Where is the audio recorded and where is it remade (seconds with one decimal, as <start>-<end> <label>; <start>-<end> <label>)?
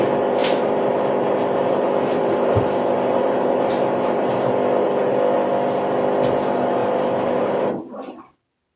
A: 0.0-0.4 recorded; 0.4-4.6 remade; 4.6-6.8 recorded; 6.8-7.8 remade; 7.8-8.8 recorded